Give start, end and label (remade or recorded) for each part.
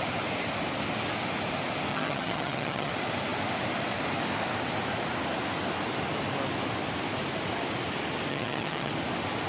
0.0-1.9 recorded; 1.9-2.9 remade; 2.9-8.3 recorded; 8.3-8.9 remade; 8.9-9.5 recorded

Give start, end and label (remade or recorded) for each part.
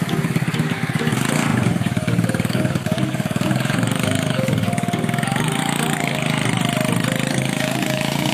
0.0-6.4 remade; 6.4-7.3 recorded; 7.3-8.3 remade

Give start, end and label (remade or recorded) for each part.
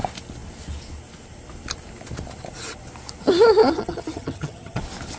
0.0-3.6 recorded; 3.6-4.8 remade; 4.8-5.2 recorded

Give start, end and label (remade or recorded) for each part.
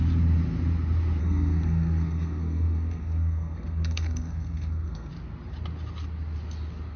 0.0-1.2 recorded; 1.2-5.1 remade; 5.1-7.0 recorded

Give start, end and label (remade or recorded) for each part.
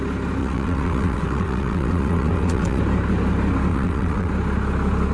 0.0-0.4 recorded; 0.4-2.8 remade; 2.8-3.7 recorded; 3.7-4.3 remade; 4.3-5.1 recorded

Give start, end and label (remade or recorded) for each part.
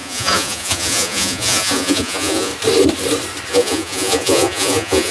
0.0-2.5 remade; 2.5-3.5 recorded; 3.5-5.1 remade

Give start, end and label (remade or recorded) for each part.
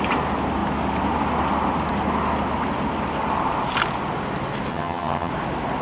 0.0-4.7 recorded; 4.7-5.3 remade; 5.3-5.8 recorded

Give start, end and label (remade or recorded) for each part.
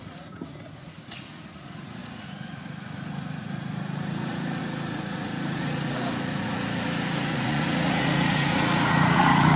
0.0-9.6 remade